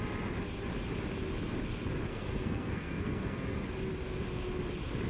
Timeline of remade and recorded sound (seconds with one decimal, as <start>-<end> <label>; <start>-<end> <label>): 0.0-2.1 recorded; 2.1-3.6 remade; 3.6-5.1 recorded